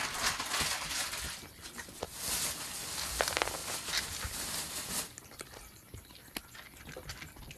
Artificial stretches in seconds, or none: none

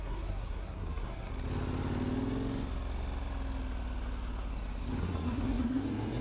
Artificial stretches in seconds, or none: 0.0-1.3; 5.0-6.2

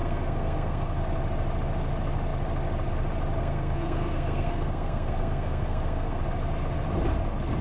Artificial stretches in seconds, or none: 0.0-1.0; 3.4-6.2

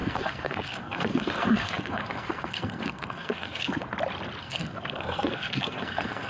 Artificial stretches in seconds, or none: 0.0-3.8; 4.4-6.3